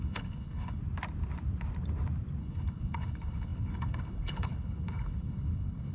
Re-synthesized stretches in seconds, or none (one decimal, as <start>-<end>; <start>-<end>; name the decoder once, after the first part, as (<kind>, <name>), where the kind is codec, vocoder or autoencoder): 0.0-0.8 (codec, HILCodec); 2.4-5.9